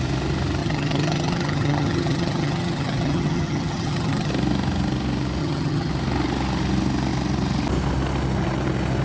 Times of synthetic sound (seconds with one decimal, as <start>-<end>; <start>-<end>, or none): 0.6-4.3; 5.4-5.9